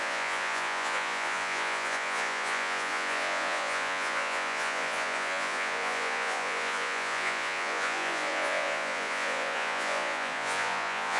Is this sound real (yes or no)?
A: no